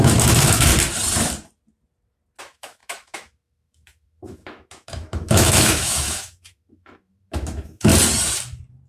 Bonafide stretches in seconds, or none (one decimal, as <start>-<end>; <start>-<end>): 0.7-2.4; 7.9-8.9

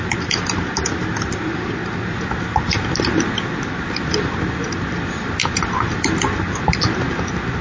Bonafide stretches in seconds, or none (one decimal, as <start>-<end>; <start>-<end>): 1.8-4.2

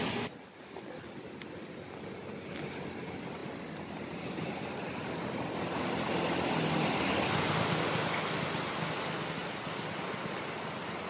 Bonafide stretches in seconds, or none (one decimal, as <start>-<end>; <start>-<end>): 0.0-11.1

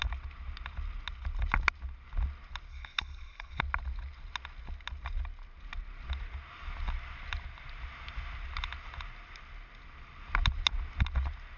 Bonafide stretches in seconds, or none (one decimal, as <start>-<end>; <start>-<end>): 0.0-2.7; 3.6-11.6

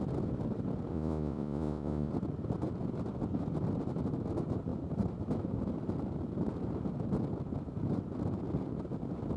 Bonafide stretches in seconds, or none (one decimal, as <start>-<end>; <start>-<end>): 0.0-0.9; 2.1-9.4

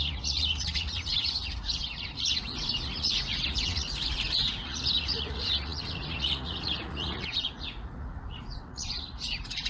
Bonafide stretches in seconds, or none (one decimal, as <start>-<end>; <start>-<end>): none

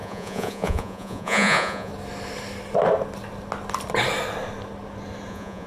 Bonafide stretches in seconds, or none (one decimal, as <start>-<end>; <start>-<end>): 1.9-5.3